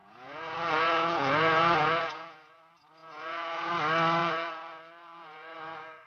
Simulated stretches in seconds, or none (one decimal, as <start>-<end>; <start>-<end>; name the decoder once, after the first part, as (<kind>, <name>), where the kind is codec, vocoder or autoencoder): 0.0-2.6 (vocoder, Vocos); 3.0-3.7; 4.2-6.1